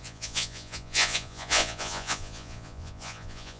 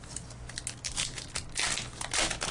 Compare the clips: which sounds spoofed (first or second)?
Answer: first